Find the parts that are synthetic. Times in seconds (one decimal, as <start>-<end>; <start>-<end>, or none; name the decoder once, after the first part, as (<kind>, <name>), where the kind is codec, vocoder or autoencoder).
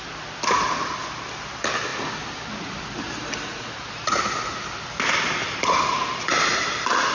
none